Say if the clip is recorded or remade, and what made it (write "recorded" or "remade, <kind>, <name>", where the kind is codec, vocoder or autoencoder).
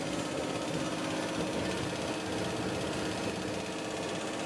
recorded